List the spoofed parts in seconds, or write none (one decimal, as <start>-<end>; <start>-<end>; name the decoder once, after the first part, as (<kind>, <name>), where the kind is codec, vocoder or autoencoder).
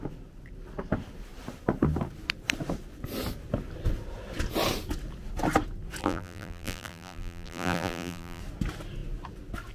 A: 6.0-8.4 (vocoder, BigVGAN v2)